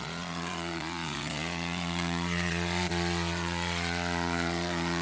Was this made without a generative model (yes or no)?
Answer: no